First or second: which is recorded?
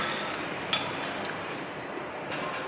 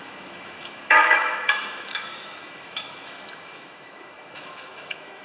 first